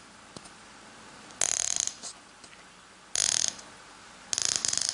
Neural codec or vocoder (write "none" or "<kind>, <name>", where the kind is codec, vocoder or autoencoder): none